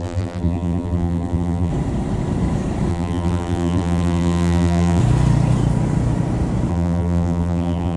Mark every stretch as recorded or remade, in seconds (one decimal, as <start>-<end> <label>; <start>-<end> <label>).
0.0-1.7 remade; 1.7-2.9 recorded; 2.9-5.0 remade; 5.0-6.7 recorded; 6.7-8.0 remade